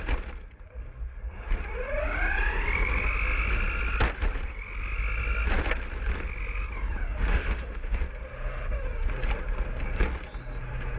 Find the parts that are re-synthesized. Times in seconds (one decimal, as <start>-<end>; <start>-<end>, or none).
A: 7.3-8.0